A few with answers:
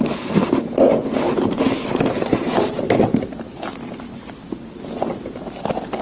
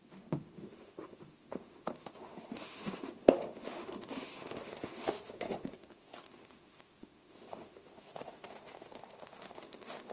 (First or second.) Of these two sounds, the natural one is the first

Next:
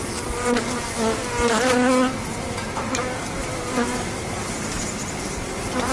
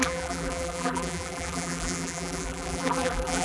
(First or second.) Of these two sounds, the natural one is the first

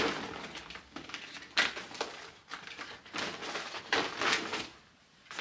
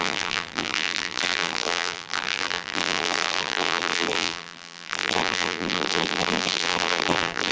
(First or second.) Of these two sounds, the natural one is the first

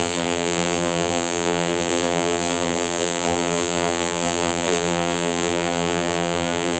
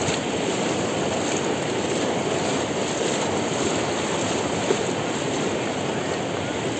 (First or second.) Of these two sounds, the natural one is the second